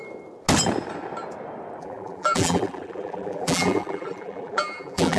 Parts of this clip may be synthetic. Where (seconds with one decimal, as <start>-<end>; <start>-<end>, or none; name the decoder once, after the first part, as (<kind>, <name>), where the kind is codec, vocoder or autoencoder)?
1.8-5.2 (vocoder, BigVGAN v2)